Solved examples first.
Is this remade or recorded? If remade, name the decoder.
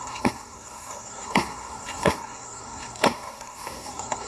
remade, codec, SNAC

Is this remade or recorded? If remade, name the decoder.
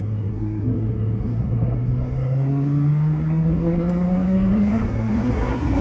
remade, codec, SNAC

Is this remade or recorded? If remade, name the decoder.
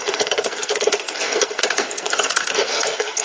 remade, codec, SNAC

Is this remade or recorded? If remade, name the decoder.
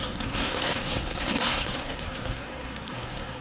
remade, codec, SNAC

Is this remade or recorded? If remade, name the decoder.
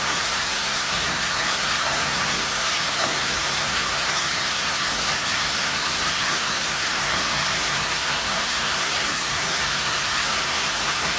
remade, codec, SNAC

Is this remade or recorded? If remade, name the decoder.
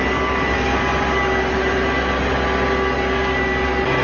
recorded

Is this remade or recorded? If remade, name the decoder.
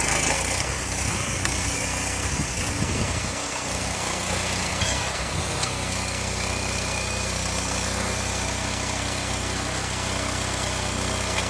remade, codec, SNAC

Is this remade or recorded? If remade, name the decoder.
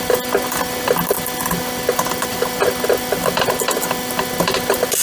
recorded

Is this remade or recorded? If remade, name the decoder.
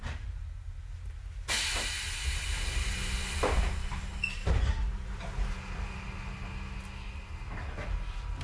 recorded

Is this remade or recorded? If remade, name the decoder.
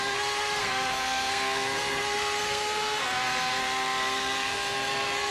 remade, codec, SNAC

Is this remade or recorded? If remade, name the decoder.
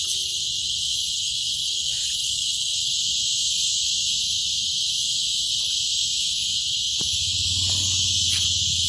recorded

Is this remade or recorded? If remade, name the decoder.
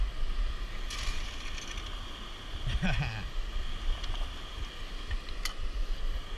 recorded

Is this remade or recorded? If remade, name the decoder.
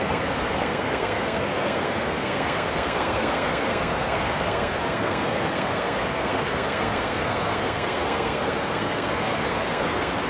remade, codec, SNAC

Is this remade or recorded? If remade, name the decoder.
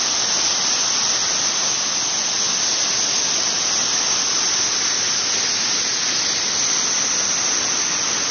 recorded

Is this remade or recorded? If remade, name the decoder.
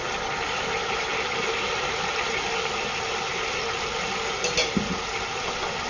recorded